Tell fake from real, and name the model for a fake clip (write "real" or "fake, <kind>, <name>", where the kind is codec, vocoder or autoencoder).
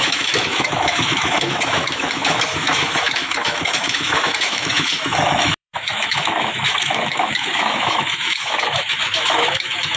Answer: fake, autoencoder, DAC-VAE